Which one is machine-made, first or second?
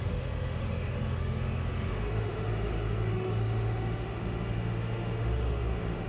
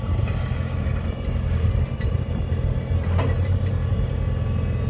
first